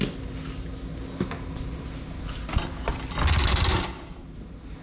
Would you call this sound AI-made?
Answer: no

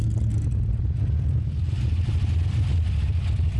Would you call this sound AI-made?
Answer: yes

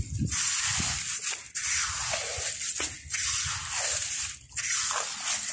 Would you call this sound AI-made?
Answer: no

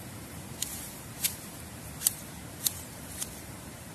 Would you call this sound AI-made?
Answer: yes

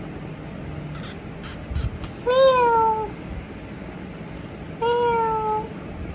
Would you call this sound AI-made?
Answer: no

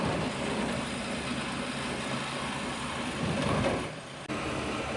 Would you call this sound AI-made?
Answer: no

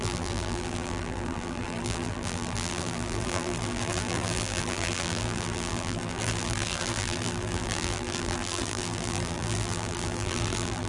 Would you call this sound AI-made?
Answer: yes